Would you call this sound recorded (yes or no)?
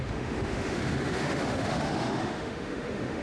no